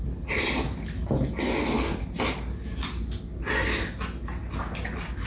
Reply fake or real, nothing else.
real